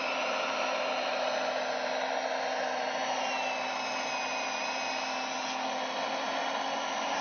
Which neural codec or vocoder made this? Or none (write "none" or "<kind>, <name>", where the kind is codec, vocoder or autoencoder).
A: none